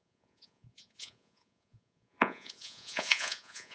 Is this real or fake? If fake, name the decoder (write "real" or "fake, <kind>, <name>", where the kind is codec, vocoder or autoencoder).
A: fake, vocoder, Vocos